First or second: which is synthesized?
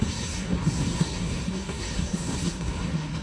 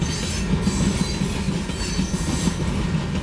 first